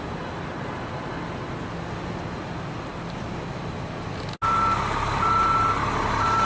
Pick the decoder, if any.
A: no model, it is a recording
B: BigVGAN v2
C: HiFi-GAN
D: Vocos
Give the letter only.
A